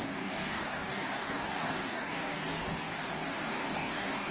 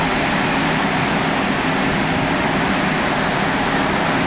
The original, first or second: second